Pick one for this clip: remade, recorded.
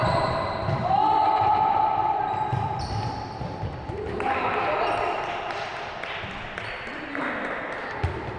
remade